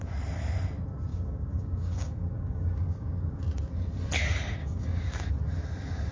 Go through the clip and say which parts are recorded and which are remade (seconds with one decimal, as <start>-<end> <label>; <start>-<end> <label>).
0.0-1.1 recorded; 1.1-3.4 remade; 3.4-4.6 recorded; 4.6-5.3 remade; 5.3-6.1 recorded